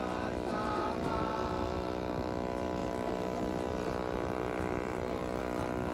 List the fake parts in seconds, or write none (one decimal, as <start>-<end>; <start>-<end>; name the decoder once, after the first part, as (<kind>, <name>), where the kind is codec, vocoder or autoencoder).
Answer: 0.5-1.1 (vocoder, BigVGAN v2); 2.8-5.4